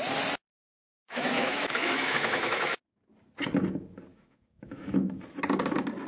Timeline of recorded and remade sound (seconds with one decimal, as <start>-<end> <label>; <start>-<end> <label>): 0.0-0.5 recorded; 0.5-2.8 remade; 2.8-4.1 recorded; 4.1-5.2 remade; 5.2-6.1 recorded